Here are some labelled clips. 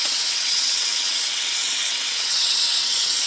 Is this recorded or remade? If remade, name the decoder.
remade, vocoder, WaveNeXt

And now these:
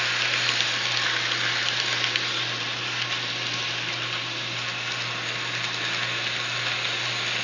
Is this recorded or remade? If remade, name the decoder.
recorded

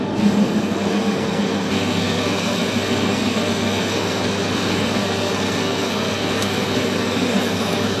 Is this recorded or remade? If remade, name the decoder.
remade, codec, SNAC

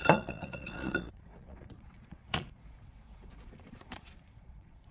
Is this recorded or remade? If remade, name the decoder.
remade, vocoder, Vocos